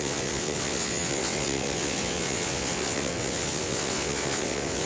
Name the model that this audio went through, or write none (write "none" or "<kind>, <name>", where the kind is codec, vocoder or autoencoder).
vocoder, WaveNeXt